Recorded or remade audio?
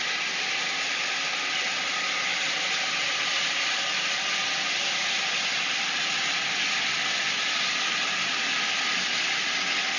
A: recorded